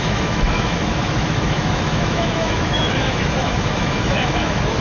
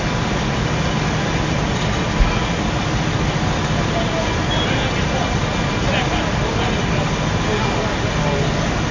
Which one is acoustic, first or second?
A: second